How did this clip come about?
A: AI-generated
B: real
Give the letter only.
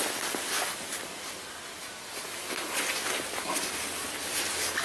B